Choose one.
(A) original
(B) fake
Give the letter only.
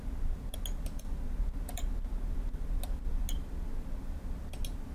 A